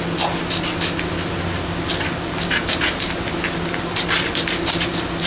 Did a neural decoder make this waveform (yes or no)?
no